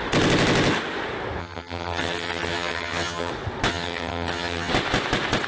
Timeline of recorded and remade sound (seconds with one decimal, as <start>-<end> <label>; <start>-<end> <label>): 0.0-1.4 recorded; 1.4-3.3 remade; 3.3-3.7 recorded; 3.7-4.7 remade; 4.7-5.5 recorded